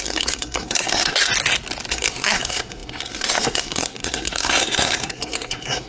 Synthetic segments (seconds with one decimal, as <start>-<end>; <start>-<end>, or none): 0.0-1.3; 1.9-5.9